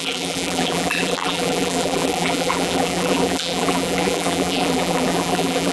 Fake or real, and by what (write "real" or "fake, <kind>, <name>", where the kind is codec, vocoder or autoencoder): fake, vocoder, BigVGAN v2